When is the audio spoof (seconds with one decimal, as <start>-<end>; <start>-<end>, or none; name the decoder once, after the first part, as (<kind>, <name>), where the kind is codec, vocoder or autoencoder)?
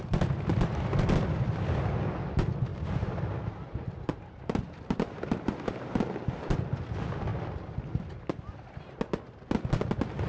2.7-6.1 (vocoder, BigVGAN v2)